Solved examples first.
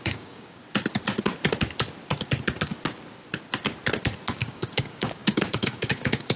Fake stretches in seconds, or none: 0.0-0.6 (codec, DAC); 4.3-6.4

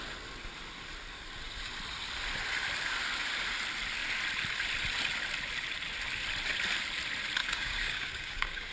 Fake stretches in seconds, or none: 7.4-8.7 (codec, DAC)

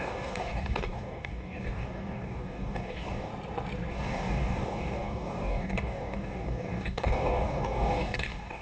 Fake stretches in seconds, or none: 0.0-3.3 (codec, DAC); 3.9-8.6

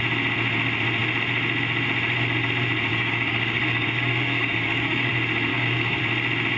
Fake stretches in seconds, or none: 2.9-5.1 (codec, DAC); 5.5-6.0

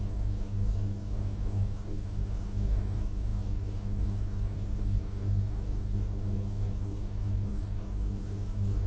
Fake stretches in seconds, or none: 0.0-8.9 (codec, DAC)

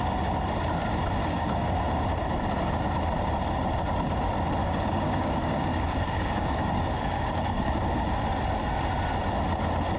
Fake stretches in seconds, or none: 1.2-1.8 (codec, DAC); 4.6-7.7

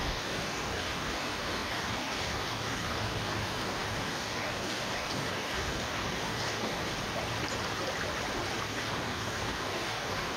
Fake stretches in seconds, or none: 0.0-6.9 (codec, DAC); 8.7-10.4